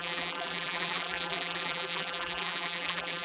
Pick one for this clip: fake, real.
fake